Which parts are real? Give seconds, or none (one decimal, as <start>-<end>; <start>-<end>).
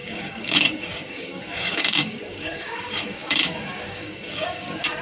none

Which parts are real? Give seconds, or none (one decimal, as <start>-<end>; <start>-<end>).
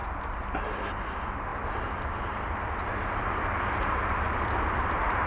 0.0-5.3